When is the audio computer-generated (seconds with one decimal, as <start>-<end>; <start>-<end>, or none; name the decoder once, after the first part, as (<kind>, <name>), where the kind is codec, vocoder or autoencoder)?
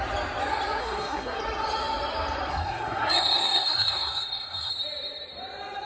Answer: 0.8-1.4 (codec, SNAC); 2.5-4.7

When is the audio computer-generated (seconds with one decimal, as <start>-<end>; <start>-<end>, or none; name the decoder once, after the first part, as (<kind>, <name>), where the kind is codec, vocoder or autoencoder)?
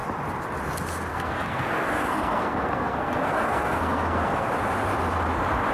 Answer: 1.1-4.5 (codec, SNAC)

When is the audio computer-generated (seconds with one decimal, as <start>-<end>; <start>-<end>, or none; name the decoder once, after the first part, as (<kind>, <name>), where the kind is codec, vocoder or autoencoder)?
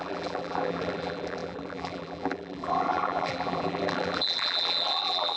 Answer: 0.0-5.4 (vocoder, BigVGAN v2)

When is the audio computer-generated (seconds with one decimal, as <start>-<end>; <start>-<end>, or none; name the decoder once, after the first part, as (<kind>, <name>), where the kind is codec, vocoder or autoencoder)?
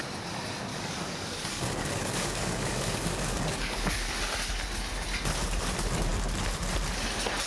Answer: 0.7-4.1 (codec, DAC)